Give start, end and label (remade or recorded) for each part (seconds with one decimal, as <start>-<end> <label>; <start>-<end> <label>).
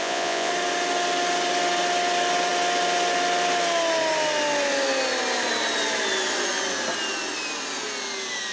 0.0-0.5 remade; 0.5-8.5 recorded